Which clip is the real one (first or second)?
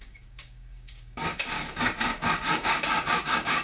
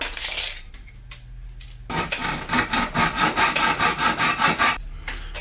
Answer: second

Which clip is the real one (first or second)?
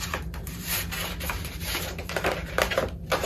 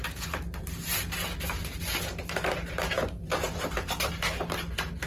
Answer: second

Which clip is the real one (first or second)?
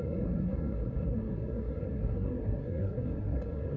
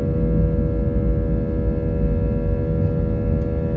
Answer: second